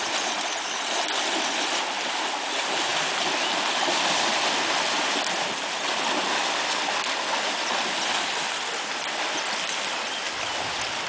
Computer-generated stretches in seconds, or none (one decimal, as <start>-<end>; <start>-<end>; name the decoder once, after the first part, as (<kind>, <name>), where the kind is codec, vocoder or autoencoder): none